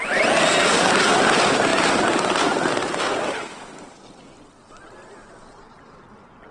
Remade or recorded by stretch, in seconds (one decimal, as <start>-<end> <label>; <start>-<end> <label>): 0.0-6.5 recorded